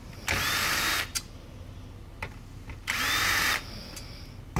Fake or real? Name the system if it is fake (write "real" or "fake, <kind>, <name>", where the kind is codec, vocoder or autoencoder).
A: fake, vocoder, BigVGAN v2